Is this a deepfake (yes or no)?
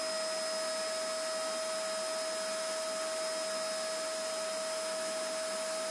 no